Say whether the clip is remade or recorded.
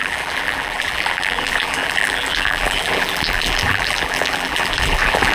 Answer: remade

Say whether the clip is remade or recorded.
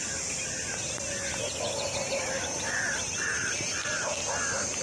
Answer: recorded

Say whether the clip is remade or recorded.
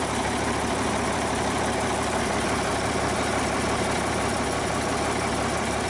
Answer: remade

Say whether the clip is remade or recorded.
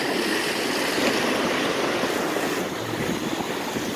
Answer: recorded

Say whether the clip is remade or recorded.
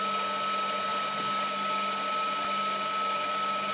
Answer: recorded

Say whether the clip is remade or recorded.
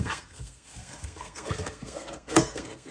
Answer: remade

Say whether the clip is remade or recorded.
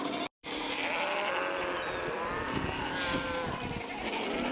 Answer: recorded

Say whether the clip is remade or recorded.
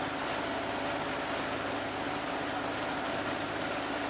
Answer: recorded